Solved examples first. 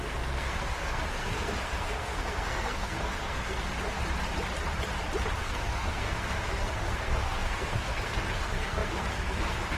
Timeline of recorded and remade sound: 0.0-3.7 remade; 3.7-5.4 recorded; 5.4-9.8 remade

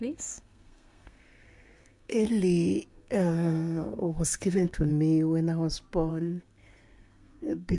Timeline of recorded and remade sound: 0.0-2.3 remade; 2.3-2.9 recorded; 2.9-4.9 remade; 4.9-6.1 recorded; 6.1-7.8 remade

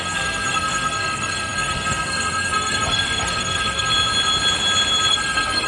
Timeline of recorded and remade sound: 0.0-3.9 remade; 3.9-5.1 recorded; 5.1-5.7 remade

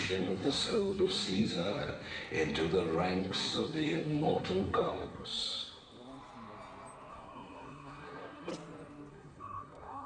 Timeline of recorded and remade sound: 0.0-1.9 remade; 1.9-3.2 recorded; 3.2-5.8 remade; 5.8-7.1 recorded; 7.1-8.5 remade; 8.5-9.1 recorded; 9.1-10.1 remade

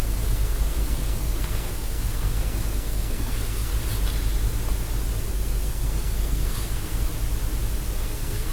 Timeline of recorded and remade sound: 0.0-3.7 remade; 3.7-5.3 recorded; 5.3-7.1 remade; 7.1-8.0 recorded; 8.0-8.5 remade

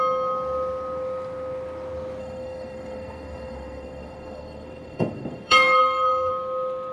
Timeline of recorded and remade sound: 0.0-2.2 recorded; 2.2-6.3 remade; 6.3-6.9 recorded